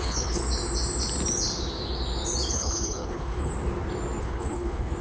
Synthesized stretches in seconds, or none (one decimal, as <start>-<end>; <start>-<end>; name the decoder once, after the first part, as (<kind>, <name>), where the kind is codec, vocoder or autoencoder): 0.0-0.4 (codec, HILCodec); 2.5-3.5; 4.2-5.0